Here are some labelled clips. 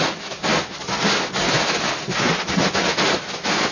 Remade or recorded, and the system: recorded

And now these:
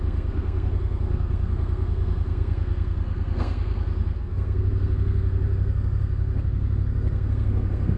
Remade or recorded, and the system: remade, codec, SNAC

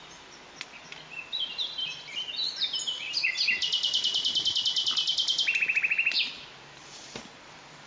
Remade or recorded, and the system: recorded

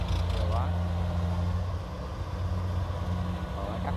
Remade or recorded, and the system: recorded